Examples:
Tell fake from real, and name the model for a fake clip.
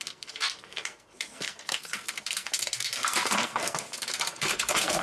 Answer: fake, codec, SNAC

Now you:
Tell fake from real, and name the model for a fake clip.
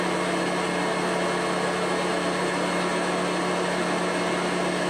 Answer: real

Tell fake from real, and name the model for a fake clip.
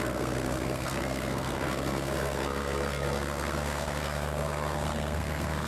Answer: fake, codec, SNAC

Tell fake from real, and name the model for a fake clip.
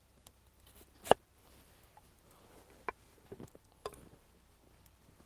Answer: real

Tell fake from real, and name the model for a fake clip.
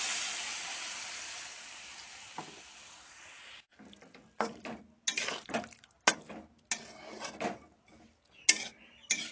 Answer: real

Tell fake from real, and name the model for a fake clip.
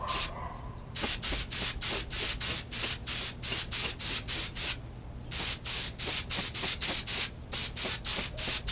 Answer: real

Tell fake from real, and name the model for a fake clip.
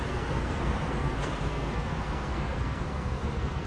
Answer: fake, codec, SNAC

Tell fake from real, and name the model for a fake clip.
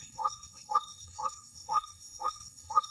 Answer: fake, codec, SNAC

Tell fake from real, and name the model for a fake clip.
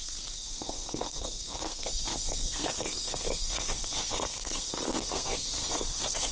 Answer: fake, codec, SNAC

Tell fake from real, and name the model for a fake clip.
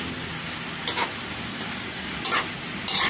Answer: real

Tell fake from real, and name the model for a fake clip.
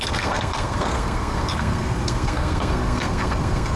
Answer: fake, codec, SNAC